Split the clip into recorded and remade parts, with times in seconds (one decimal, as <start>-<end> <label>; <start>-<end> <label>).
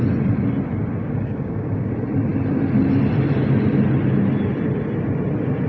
0.0-1.0 recorded; 1.0-1.9 remade; 1.9-5.7 recorded